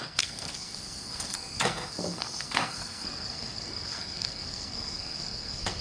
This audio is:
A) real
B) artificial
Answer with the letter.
B